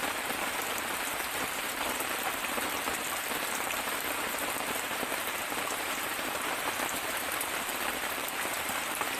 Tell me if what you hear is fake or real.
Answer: fake